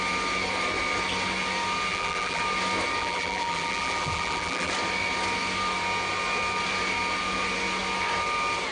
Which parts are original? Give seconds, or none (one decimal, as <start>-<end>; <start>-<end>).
0.0-1.9; 2.4-3.0; 4.7-8.7